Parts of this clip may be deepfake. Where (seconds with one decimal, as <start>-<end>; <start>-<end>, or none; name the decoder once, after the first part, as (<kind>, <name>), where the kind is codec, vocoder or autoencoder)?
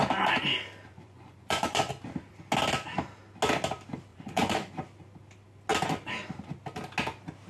0.9-1.9 (vocoder, Vocos); 4.1-4.7